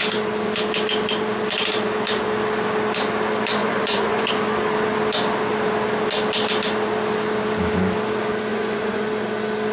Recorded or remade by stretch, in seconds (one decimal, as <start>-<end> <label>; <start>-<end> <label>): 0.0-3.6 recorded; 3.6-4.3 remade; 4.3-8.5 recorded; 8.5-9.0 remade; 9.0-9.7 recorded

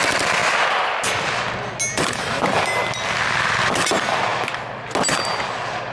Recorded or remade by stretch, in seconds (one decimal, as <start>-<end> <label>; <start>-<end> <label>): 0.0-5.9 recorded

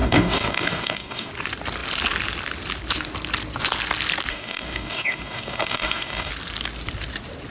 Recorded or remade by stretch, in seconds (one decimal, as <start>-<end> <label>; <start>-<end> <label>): 0.0-1.3 remade; 1.3-4.3 recorded; 4.3-6.3 remade; 6.3-7.5 recorded

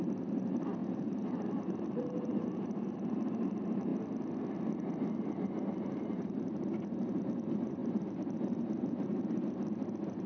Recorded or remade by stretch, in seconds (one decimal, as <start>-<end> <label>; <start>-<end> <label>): 0.0-3.9 remade; 3.9-5.7 recorded; 5.7-10.3 remade